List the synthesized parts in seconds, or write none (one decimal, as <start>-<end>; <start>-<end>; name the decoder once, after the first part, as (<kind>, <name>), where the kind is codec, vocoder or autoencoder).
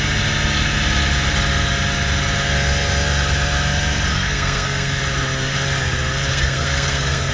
4.1-5.0 (codec, SNAC); 6.3-7.3